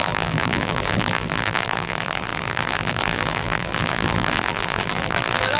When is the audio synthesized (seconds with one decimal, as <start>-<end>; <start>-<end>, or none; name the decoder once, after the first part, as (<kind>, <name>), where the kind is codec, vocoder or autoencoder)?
0.0-5.6 (vocoder, BigVGAN v2)